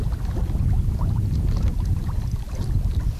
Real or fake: real